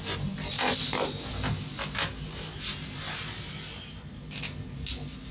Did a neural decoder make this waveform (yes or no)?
no